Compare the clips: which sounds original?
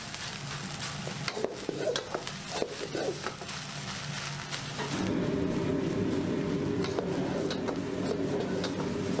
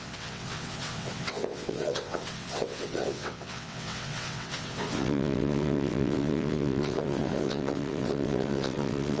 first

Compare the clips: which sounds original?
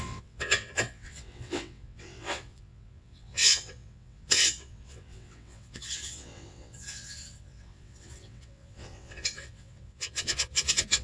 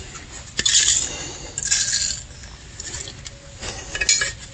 second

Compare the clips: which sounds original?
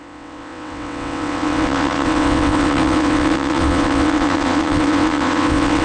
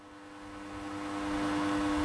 second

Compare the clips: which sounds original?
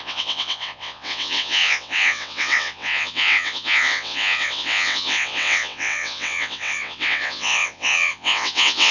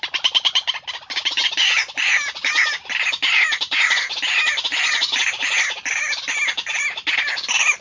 second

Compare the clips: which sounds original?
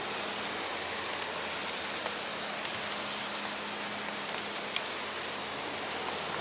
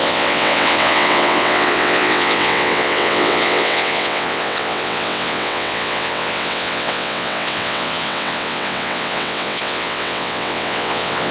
first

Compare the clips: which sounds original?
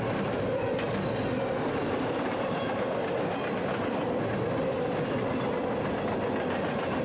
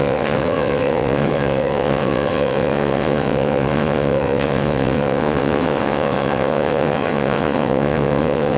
first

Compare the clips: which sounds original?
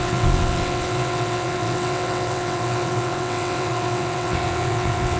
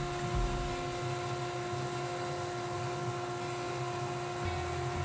second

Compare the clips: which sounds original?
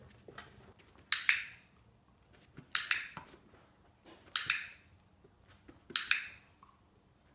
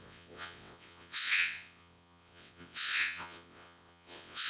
first